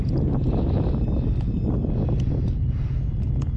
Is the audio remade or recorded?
recorded